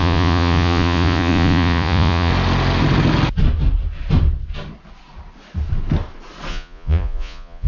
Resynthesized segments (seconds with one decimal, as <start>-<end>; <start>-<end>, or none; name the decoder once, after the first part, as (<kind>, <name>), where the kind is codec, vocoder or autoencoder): 0.0-2.3 (vocoder, Vocos); 6.5-7.7

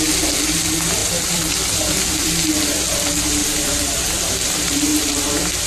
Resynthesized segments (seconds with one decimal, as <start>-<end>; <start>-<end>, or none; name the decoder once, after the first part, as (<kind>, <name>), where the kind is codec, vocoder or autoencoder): 1.0-2.3 (vocoder, BigVGAN v2); 3.4-4.0; 4.9-5.7

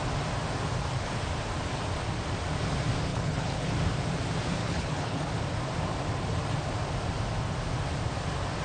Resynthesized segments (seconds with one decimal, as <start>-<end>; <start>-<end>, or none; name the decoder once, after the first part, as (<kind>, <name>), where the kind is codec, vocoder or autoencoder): 3.1-3.7 (codec, HILCodec); 4.6-5.3

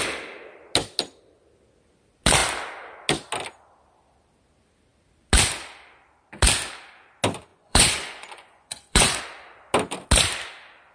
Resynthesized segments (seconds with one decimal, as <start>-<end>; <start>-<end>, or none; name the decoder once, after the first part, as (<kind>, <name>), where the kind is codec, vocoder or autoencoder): 7.5-9.2 (vocoder, Vocos)

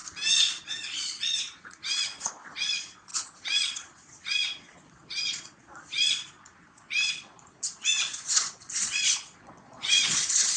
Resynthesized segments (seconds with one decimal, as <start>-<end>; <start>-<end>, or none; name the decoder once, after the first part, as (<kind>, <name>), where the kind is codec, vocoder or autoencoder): 0.5-10.6 (vocoder, Vocos)

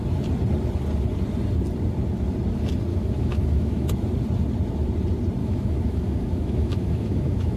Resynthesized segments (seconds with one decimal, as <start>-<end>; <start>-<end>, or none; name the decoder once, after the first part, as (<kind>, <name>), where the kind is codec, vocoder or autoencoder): 2.9-3.9 (autoencoder, DAC-VAE); 5.4-7.6

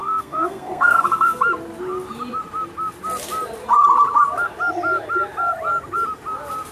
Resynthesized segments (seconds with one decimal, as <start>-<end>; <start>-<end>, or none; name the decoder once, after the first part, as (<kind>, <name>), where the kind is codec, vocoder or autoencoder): 0.0-1.4 (codec, SNAC)

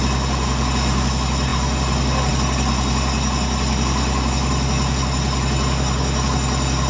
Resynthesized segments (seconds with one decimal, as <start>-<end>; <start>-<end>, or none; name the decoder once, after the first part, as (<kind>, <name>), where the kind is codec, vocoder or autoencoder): none